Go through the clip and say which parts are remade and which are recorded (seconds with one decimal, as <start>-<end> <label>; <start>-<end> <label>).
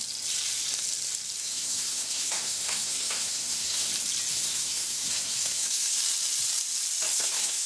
0.0-1.4 recorded; 1.4-3.9 remade; 3.9-4.3 recorded; 4.3-6.0 remade; 6.0-7.1 recorded; 7.1-7.7 remade